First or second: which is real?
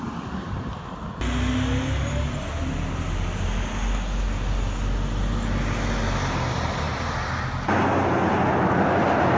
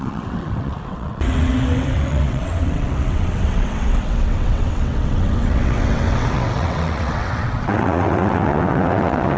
first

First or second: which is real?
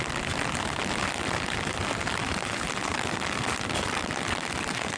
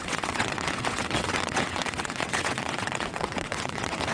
first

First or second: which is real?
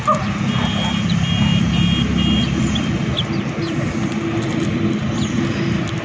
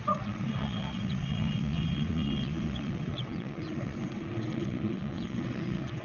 first